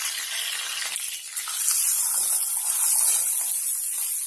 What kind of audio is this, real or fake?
real